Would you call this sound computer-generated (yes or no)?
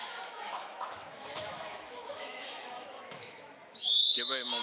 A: yes